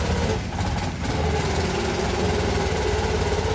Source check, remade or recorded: recorded